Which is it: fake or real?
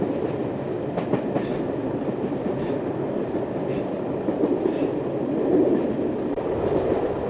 real